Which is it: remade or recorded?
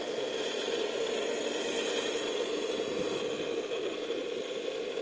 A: recorded